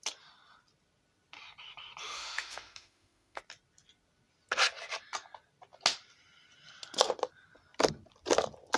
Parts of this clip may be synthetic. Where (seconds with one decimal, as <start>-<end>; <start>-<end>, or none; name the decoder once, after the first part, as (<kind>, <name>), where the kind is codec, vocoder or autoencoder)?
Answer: 2.0-3.4 (autoencoder, DAC-VAE)